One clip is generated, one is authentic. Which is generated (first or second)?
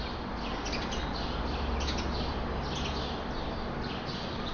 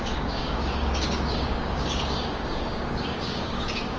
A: second